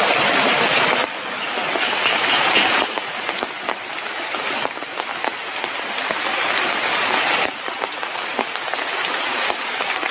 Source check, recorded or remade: recorded